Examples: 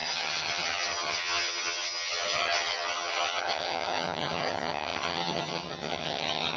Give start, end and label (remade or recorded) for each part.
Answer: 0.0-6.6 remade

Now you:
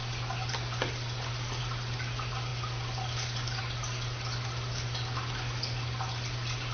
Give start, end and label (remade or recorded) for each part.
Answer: 0.0-6.7 recorded

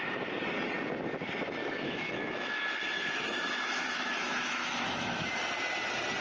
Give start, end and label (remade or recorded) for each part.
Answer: 0.0-1.6 recorded; 1.6-5.3 remade; 5.3-6.2 recorded

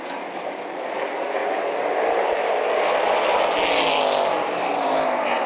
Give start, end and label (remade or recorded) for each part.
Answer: 0.0-5.5 recorded

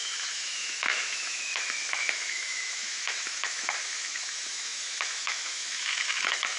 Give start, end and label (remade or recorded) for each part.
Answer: 0.0-6.6 remade

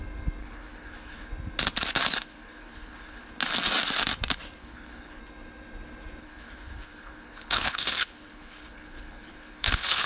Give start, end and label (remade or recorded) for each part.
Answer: 0.0-0.4 recorded; 0.4-1.3 remade; 1.3-2.3 recorded; 2.3-3.3 remade; 3.3-4.6 recorded; 4.6-5.2 remade; 5.2-6.2 recorded; 6.2-10.1 remade

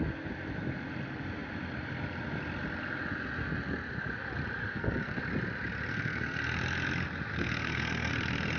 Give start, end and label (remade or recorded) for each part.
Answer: 0.0-4.6 recorded; 4.6-5.2 remade; 5.2-5.9 recorded; 5.9-6.4 remade; 6.4-7.3 recorded; 7.3-8.1 remade; 8.1-8.6 recorded